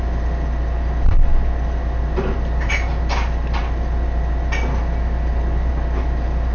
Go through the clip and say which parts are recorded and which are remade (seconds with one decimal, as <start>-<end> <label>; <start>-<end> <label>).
0.0-6.5 recorded